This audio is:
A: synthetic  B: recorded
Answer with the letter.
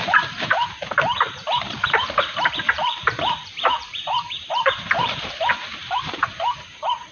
A